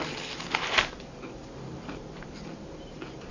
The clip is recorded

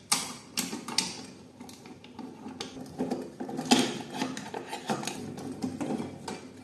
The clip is recorded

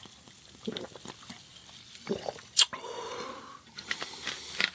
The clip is remade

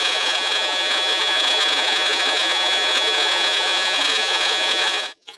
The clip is remade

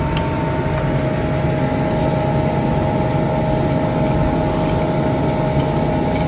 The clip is recorded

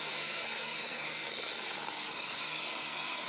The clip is remade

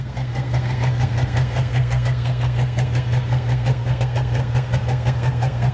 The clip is remade